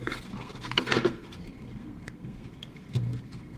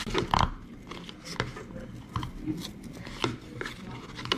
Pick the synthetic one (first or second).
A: first